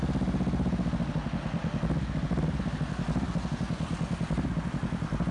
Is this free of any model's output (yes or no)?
yes